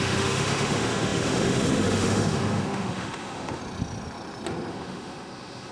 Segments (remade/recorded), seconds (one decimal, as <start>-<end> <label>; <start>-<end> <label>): 0.0-3.6 remade; 3.6-4.7 recorded; 4.7-5.7 remade